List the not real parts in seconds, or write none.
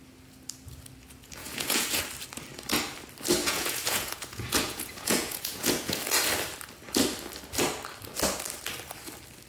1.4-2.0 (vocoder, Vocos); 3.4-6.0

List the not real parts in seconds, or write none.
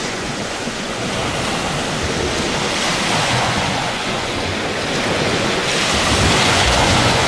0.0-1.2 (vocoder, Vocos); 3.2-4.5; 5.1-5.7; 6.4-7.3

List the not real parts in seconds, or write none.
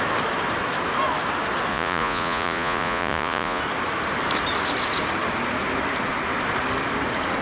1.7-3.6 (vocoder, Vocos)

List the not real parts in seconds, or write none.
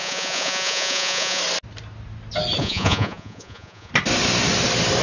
0.0-1.4 (vocoder, Vocos); 2.6-3.9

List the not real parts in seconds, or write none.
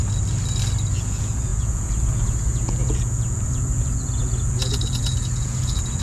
0.9-6.0 (vocoder, Vocos)